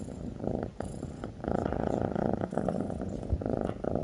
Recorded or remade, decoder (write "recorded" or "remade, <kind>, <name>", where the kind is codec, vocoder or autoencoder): remade, vocoder, Vocos